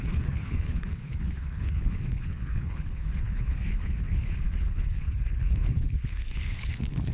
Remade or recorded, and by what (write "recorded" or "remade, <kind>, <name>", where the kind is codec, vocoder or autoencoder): remade, codec, HILCodec